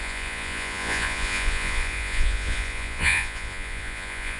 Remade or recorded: remade